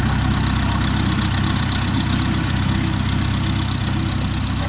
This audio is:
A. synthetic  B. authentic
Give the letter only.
B